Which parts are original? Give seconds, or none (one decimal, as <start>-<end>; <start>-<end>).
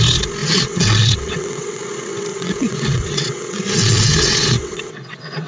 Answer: 0.0-0.4; 1.8-2.3